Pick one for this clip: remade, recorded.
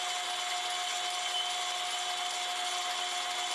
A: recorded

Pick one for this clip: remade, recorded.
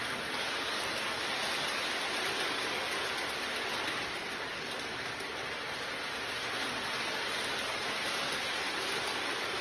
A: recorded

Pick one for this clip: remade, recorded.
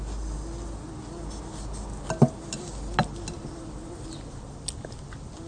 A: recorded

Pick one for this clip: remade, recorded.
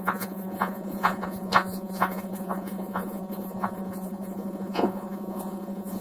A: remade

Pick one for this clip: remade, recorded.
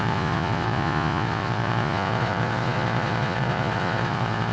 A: remade